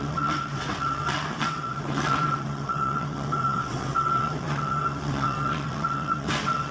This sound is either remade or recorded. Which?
remade